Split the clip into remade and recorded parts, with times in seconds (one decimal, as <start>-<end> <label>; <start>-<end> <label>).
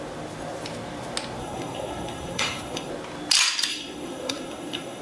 0.0-1.4 recorded; 1.4-2.9 remade; 2.9-3.7 recorded; 3.7-5.0 remade